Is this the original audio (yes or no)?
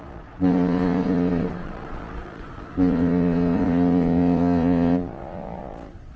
no